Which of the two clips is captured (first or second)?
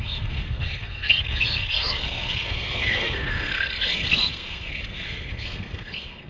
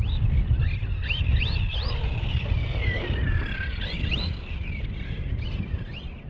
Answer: second